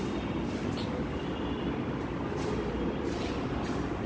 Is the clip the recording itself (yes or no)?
yes